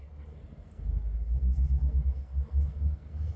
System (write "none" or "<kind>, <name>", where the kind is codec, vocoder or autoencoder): codec, SNAC